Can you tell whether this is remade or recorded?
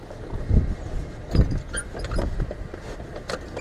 remade